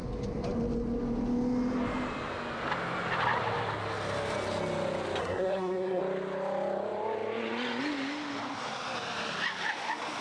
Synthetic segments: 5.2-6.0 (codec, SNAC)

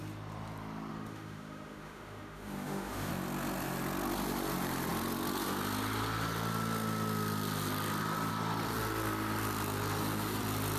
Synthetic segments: 0.9-3.1 (autoencoder, DAC-VAE)

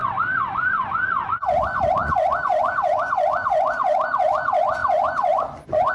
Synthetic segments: 0.0-5.9 (vocoder, Vocos)

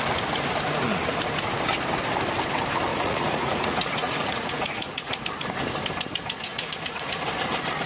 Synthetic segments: 2.9-5.2 (vocoder, Vocos); 6.5-7.2